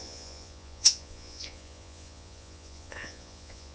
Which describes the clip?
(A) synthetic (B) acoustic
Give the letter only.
A